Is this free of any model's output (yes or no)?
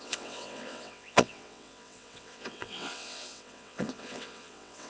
no